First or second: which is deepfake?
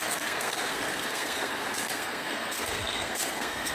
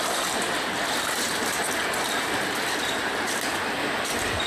first